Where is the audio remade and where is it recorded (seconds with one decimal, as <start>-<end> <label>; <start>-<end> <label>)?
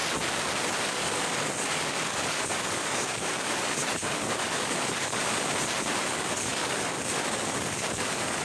0.0-0.9 recorded; 0.9-5.2 remade; 5.2-6.0 recorded; 6.0-8.4 remade